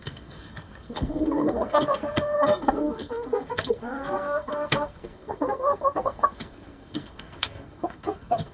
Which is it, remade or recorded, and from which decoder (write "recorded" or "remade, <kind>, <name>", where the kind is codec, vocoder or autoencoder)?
remade, codec, SNAC